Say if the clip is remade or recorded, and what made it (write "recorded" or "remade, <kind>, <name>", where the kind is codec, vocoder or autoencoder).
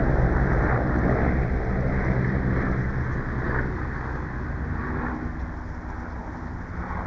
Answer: recorded